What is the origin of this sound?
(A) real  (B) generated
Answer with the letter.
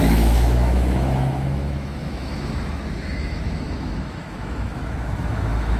B